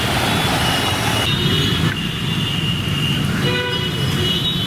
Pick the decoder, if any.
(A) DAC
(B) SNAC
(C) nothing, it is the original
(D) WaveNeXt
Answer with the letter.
C